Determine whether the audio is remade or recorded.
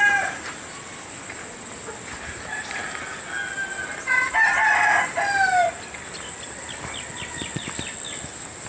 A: recorded